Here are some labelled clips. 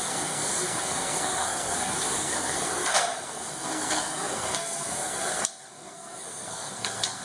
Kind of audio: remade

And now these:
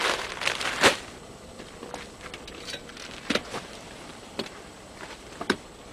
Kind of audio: remade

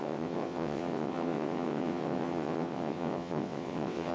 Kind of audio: remade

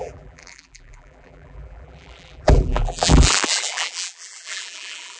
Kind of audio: remade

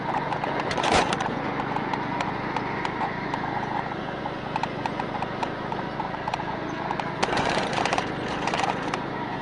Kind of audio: remade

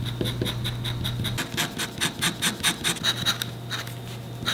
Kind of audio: recorded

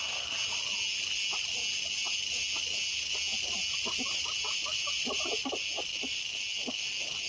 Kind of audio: recorded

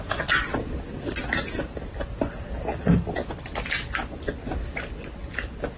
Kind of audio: recorded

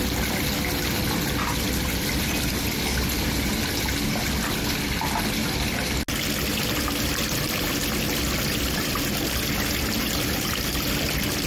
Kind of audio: recorded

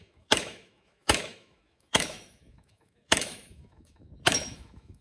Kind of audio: remade